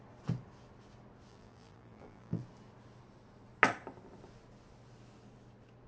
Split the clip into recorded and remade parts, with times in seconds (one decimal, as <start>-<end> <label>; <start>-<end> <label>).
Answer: 0.0-1.3 recorded; 1.3-2.4 remade; 2.4-5.9 recorded